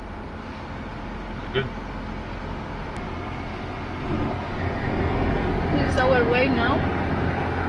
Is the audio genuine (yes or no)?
yes